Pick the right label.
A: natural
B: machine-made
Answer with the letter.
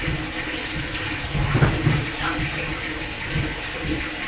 A